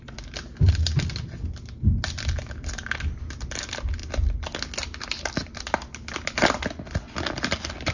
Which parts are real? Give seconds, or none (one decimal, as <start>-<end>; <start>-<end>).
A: 0.0-7.9

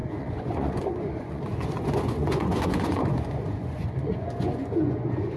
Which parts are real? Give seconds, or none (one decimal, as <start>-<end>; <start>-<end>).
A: none

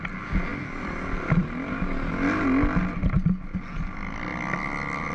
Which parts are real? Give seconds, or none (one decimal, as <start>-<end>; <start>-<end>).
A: 0.0-5.1

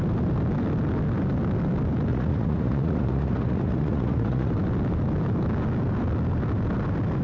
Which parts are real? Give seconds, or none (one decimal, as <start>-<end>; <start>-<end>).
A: 0.0-2.1; 4.5-7.2

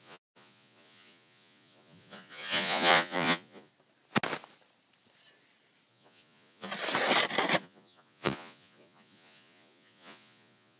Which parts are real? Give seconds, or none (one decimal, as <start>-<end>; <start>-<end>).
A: 3.7-5.9; 6.7-7.6

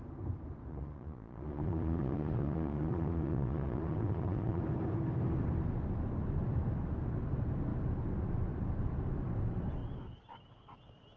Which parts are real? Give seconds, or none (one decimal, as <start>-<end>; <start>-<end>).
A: 0.0-0.7; 4.6-11.2